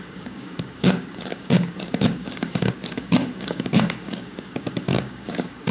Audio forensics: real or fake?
fake